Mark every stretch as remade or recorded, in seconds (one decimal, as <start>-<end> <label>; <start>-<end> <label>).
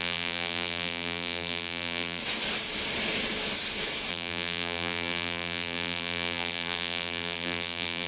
0.0-2.2 remade; 2.2-4.1 recorded; 4.1-8.1 remade